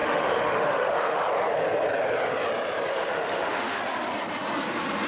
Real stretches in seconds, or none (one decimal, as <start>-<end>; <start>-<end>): 1.2-2.9; 3.8-5.1